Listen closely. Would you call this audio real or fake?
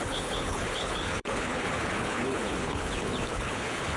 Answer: fake